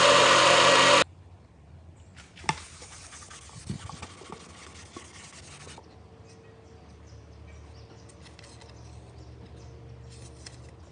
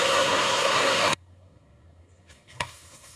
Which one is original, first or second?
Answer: first